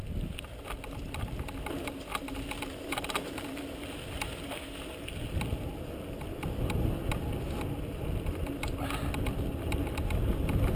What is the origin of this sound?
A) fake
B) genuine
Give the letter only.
B